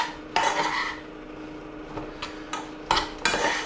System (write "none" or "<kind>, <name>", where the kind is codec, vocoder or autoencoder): none